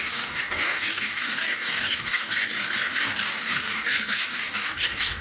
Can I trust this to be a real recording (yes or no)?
no